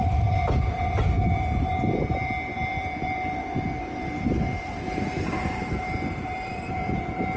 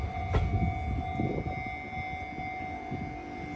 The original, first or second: second